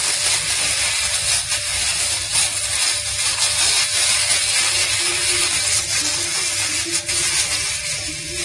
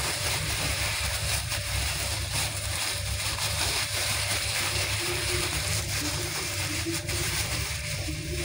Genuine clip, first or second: first